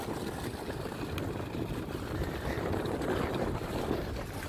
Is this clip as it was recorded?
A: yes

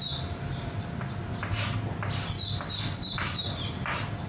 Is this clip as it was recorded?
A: yes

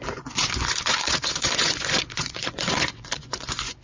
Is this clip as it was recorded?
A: no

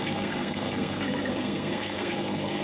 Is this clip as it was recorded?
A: no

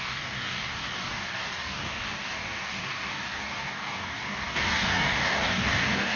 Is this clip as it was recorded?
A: no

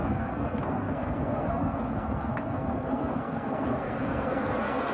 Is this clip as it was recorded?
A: no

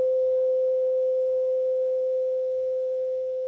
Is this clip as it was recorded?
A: no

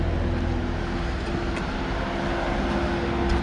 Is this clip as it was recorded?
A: yes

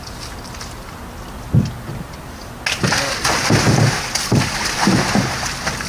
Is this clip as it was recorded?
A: yes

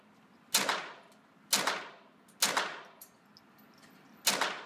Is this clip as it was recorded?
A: yes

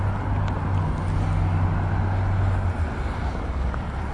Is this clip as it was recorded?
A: yes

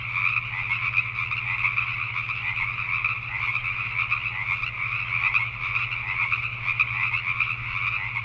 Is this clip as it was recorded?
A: yes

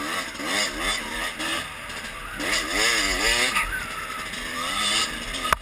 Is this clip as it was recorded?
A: yes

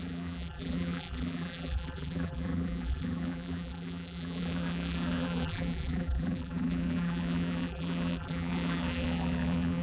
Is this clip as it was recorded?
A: no